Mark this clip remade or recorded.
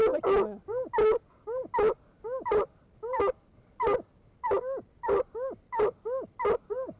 recorded